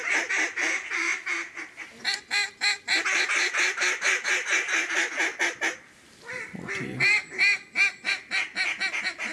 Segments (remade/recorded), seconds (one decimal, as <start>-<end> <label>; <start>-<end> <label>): 0.0-9.3 recorded